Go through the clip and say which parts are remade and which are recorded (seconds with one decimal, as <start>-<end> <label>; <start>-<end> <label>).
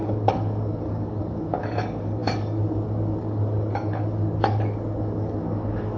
0.0-6.0 remade